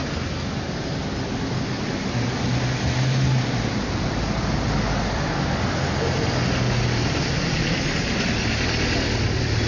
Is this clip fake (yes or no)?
no